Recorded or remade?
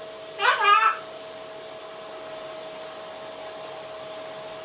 recorded